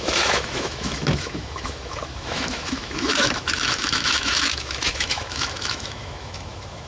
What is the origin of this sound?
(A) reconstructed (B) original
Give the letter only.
A